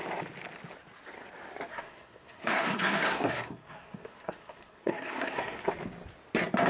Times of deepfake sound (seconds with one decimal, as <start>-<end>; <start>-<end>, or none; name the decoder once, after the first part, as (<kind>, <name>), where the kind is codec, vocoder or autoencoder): 1.7-5.7 (codec, SNAC)